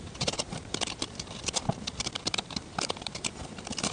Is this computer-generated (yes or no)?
yes